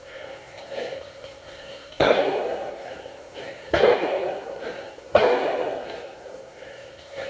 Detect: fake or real fake